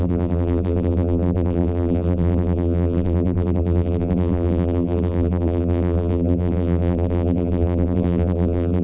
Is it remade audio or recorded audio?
remade